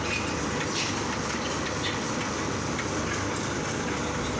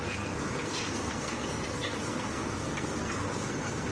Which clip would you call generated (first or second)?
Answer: second